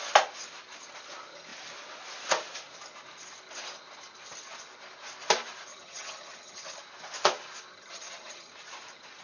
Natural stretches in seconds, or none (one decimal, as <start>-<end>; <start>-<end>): 0.0-5.7; 6.8-7.7; 8.5-9.2